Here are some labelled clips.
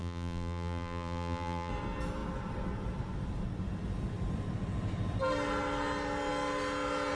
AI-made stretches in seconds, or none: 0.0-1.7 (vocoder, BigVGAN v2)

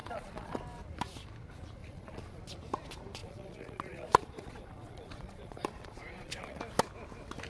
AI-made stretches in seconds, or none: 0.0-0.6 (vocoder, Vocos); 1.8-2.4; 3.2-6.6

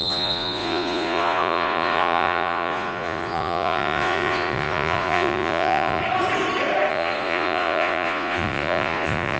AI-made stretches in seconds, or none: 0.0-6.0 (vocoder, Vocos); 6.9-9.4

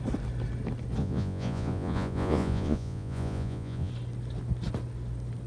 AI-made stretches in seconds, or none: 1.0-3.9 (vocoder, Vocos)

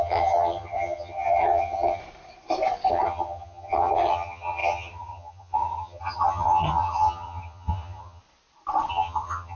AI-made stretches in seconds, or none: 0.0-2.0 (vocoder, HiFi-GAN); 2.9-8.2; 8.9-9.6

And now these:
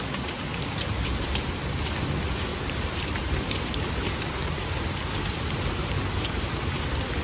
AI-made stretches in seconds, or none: 0.5-1.7 (vocoder, BigVGAN v2); 2.5-6.8

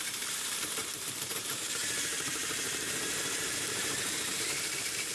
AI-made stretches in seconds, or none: 0.0-5.1 (vocoder, BigVGAN v2)